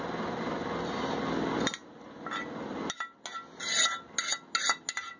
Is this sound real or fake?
real